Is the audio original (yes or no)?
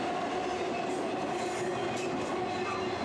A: yes